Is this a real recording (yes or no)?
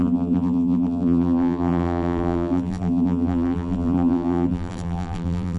no